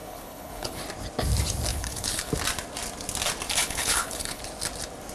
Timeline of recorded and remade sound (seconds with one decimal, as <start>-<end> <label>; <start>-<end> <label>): 0.0-0.8 remade; 0.8-1.7 recorded; 1.7-2.3 remade; 2.3-3.6 recorded; 3.6-4.4 remade; 4.4-5.1 recorded